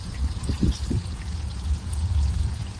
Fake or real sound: fake